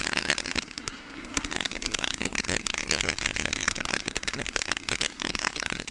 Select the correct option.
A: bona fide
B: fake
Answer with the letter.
B